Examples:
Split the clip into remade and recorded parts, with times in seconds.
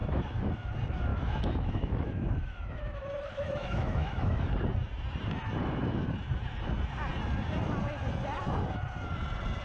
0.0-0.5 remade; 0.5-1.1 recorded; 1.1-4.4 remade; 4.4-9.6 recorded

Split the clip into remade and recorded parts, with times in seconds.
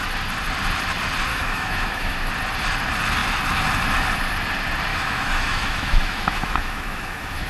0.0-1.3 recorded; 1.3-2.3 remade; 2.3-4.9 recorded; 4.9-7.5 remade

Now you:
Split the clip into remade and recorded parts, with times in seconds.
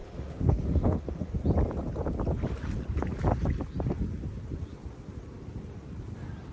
0.0-1.3 remade; 1.3-6.5 recorded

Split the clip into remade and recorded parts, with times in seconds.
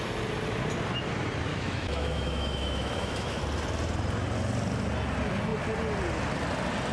0.0-1.5 recorded; 1.5-3.4 remade; 3.4-6.9 recorded